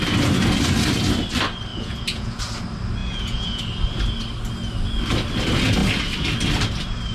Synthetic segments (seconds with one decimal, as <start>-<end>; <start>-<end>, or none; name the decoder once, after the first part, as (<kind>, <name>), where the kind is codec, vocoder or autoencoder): 1.7-2.4 (vocoder, Vocos); 3.0-3.6